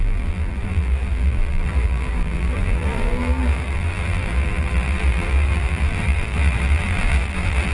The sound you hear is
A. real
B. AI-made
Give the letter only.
B